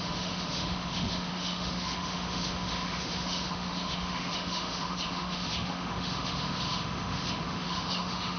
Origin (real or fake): fake